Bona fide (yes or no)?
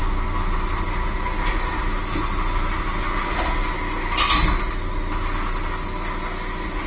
yes